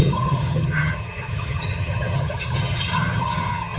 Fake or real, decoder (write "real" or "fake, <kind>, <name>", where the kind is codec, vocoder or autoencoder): fake, vocoder, HiFi-GAN